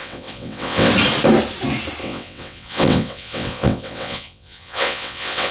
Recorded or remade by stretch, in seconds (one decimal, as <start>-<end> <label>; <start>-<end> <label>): 0.0-0.9 remade; 0.9-2.0 recorded; 2.0-5.5 remade